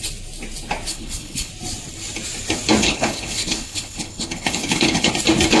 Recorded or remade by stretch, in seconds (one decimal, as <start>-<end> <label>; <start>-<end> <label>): 0.0-0.9 recorded; 0.9-1.5 remade; 1.5-2.8 recorded; 2.8-5.1 remade; 5.1-5.6 recorded